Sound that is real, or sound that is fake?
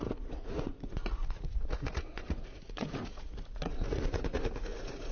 fake